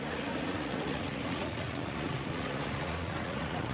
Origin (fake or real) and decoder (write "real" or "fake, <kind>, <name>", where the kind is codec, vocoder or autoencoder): fake, vocoder, Vocos